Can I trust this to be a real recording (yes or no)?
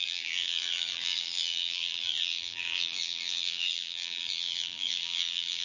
no